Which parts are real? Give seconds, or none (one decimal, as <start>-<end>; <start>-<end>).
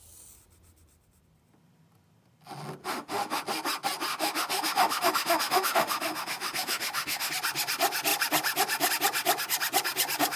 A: 0.0-2.8; 3.4-4.1; 7.3-10.4